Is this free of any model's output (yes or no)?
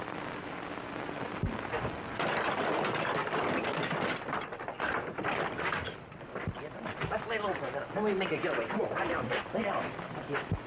yes